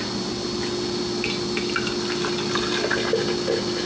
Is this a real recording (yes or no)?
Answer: yes